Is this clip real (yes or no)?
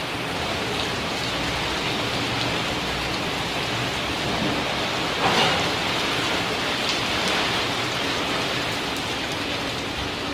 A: yes